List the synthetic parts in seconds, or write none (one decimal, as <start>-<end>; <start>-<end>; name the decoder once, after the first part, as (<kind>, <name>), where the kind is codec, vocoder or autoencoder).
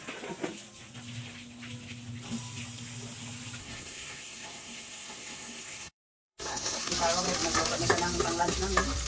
3.6-6.9 (codec, SNAC)